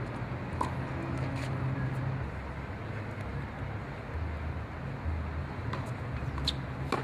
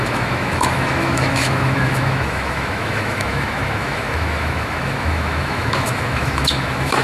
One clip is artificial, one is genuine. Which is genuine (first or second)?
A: first